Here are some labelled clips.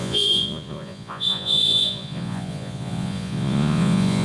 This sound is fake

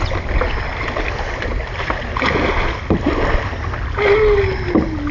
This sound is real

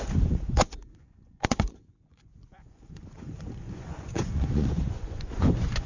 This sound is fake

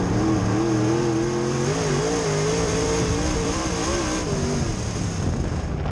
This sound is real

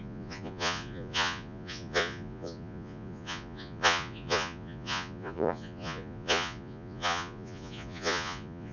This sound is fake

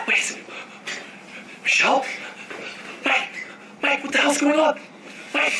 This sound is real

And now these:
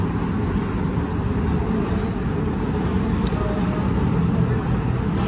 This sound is real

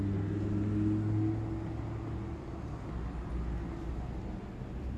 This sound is real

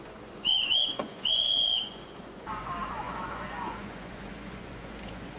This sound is fake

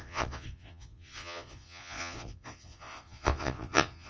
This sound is fake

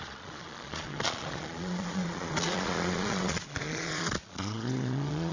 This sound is fake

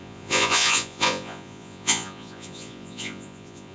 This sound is fake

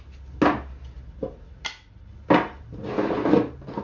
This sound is real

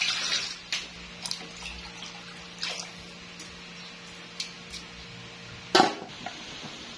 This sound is real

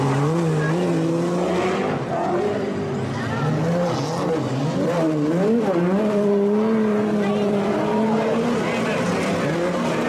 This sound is real